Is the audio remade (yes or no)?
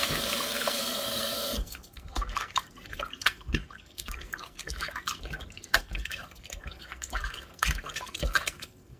yes